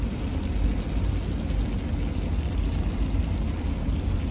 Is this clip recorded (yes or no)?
yes